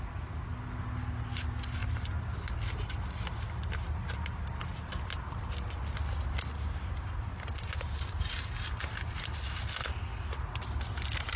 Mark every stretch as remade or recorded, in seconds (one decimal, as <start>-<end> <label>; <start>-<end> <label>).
0.0-11.4 recorded